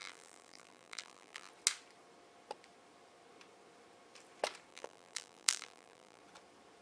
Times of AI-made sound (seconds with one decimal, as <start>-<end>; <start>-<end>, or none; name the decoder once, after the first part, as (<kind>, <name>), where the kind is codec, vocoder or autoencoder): 0.0-1.5 (vocoder, BigVGAN v2); 4.7-6.2

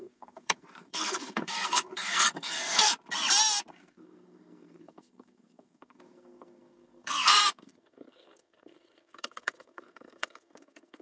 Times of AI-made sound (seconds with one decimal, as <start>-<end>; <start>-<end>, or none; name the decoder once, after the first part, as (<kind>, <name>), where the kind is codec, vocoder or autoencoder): 0.0-2.9 (codec, SNAC); 3.7-11.0

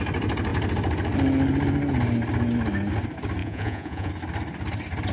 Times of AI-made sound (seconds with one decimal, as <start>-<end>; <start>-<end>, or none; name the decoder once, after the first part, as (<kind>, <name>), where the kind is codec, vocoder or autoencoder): 3.4-4.1 (vocoder, Vocos)

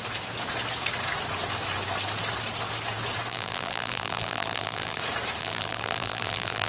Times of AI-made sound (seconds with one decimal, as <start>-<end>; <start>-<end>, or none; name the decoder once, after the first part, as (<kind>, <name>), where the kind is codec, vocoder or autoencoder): 3.3-5.0 (vocoder, BigVGAN v2); 5.4-6.7

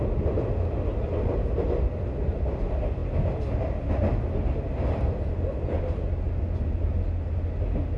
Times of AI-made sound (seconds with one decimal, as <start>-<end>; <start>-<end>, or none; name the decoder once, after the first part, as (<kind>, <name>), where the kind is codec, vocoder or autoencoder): none

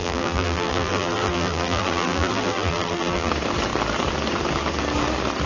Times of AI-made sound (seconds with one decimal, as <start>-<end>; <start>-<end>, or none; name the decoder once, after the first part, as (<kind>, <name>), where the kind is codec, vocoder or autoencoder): 0.0-3.3 (vocoder, BigVGAN v2)

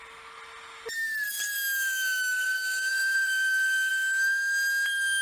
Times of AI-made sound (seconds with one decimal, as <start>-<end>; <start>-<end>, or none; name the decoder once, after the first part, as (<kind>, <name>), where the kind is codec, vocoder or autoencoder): 2.9-3.9 (vocoder, BigVGAN v2)